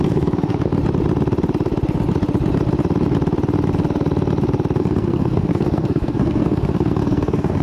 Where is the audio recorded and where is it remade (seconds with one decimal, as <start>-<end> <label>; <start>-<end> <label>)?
0.0-0.7 remade; 0.7-4.8 recorded; 4.8-7.6 remade